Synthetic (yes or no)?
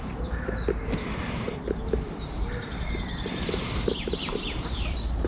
yes